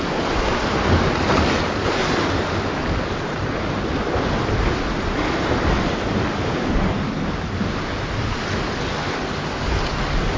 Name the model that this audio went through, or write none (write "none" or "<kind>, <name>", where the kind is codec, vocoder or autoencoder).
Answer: none